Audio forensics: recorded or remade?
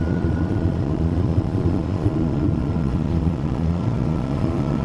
remade